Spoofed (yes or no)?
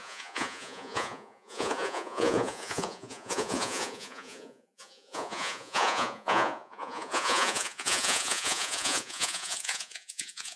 yes